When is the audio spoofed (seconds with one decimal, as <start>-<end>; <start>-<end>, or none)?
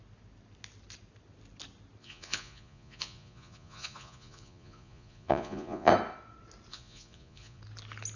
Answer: 2.0-5.9; 6.7-7.6